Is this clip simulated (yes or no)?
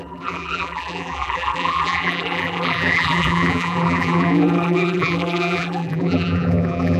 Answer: yes